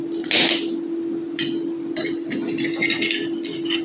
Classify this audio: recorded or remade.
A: recorded